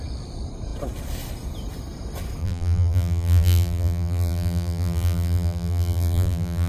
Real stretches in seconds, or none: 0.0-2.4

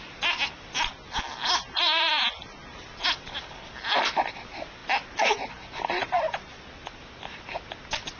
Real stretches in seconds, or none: 0.0-2.6; 4.0-8.2

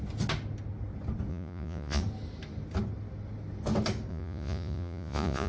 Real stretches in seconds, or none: 0.0-1.3; 2.0-4.1